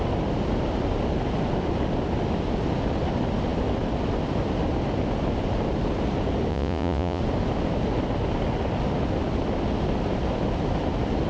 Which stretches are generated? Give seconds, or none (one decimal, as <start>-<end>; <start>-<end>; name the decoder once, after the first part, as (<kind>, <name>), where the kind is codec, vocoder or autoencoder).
6.5-7.2 (vocoder, Vocos)